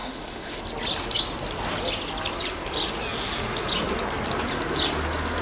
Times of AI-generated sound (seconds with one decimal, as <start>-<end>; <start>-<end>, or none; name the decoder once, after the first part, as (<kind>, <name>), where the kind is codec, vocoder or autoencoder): 0.0-0.6 (autoencoder, DAC-VAE)